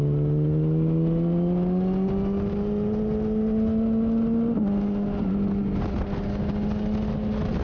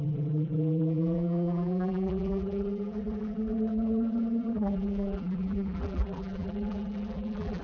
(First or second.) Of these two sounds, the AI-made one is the second